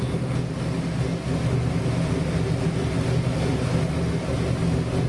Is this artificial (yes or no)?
no